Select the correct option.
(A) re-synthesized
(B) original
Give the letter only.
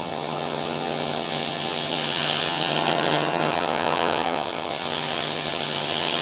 A